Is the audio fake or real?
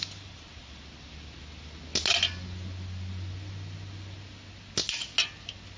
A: real